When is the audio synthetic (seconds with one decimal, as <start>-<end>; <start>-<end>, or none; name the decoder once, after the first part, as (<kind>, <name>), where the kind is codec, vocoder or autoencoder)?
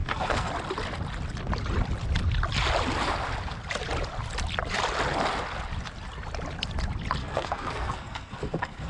0.0-0.5 (codec, SNAC); 7.2-8.9